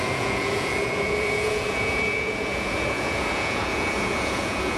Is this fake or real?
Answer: fake